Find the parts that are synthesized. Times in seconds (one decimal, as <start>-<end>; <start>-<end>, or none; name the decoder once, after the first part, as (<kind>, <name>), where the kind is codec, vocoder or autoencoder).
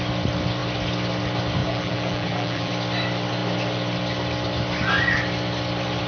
1.6-2.7 (vocoder, BigVGAN v2)